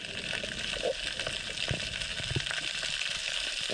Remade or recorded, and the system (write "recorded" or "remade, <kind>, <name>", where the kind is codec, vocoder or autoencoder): recorded